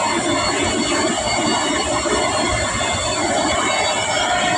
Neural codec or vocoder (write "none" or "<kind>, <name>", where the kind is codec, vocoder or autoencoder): none